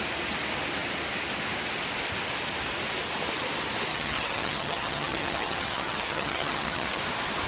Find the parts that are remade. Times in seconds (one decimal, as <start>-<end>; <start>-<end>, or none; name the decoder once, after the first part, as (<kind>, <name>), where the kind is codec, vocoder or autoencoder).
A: 3.9-7.0 (vocoder, HiFi-GAN)